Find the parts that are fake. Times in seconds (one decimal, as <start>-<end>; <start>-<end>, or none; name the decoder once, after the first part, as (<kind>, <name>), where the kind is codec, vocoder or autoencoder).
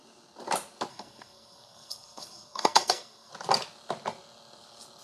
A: 0.9-3.3 (codec, SNAC)